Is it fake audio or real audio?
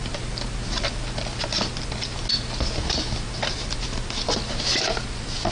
real